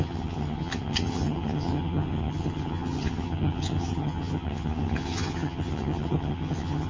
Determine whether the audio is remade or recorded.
remade